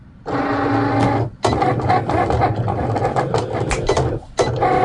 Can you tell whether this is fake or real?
real